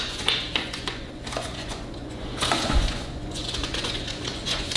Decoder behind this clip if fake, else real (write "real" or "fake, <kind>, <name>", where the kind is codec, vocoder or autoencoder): fake, vocoder, Vocos